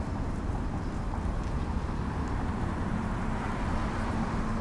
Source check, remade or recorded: recorded